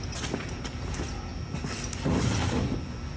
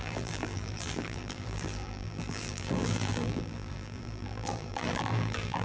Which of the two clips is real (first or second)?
first